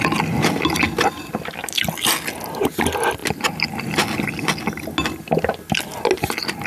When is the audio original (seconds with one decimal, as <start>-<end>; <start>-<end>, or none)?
0.0-6.7